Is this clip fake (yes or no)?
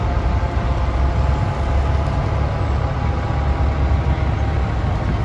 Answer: no